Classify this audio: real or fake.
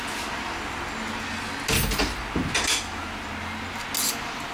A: real